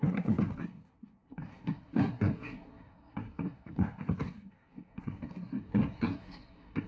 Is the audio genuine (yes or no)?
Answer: no